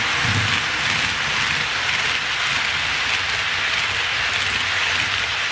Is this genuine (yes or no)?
yes